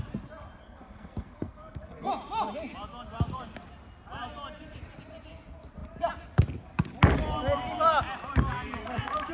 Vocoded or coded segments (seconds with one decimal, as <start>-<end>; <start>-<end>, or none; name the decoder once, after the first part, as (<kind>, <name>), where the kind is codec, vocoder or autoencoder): 0.6-2.1 (codec, SNAC); 8.8-9.3